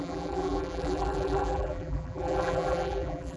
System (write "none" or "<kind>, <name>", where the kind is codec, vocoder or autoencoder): vocoder, BigVGAN v2